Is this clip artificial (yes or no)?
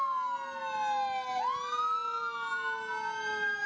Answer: no